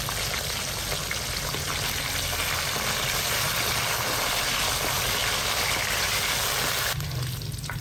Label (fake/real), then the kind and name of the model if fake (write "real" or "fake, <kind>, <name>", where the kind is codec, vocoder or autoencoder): real